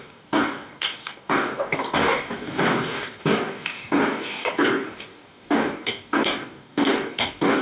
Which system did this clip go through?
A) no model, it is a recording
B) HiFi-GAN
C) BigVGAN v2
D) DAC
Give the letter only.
D